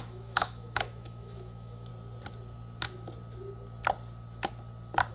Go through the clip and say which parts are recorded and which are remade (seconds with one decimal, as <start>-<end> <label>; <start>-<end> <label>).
0.0-1.9 remade; 1.9-5.1 recorded

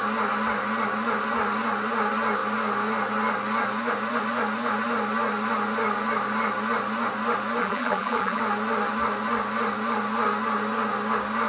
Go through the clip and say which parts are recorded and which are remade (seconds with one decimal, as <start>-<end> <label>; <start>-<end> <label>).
0.0-7.6 recorded; 7.6-8.4 remade; 8.4-11.5 recorded

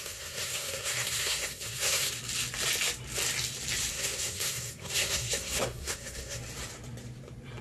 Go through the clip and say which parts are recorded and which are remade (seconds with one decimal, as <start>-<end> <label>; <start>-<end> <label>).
0.0-2.2 remade; 2.2-3.9 recorded; 3.9-6.4 remade; 6.4-7.6 recorded

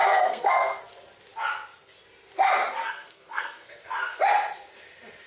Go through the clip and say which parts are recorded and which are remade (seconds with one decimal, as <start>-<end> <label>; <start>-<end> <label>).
0.0-0.8 remade; 0.8-2.8 recorded; 2.8-3.7 remade; 3.7-5.3 recorded

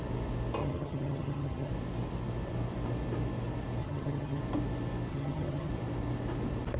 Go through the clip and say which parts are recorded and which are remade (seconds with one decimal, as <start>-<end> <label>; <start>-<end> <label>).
0.0-0.6 recorded; 0.6-1.7 remade; 1.7-3.8 recorded; 3.8-4.4 remade; 4.4-5.1 recorded; 5.1-5.7 remade; 5.7-6.8 recorded

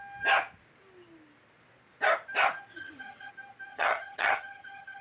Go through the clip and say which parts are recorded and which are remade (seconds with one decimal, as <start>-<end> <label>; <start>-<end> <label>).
0.0-2.7 recorded; 2.7-3.3 remade; 3.3-3.7 recorded; 3.7-5.0 remade

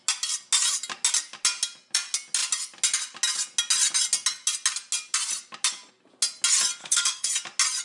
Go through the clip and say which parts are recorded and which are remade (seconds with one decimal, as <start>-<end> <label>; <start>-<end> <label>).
0.0-6.8 recorded; 6.8-7.3 remade; 7.3-7.8 recorded